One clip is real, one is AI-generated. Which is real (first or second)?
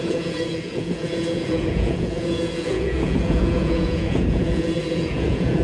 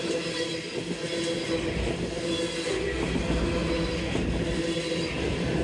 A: second